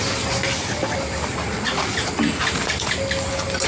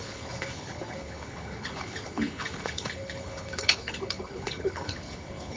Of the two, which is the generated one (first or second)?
second